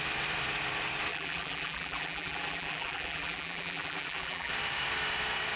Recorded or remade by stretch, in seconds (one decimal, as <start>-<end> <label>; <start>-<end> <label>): 0.0-1.1 recorded; 1.1-4.5 remade; 4.5-5.6 recorded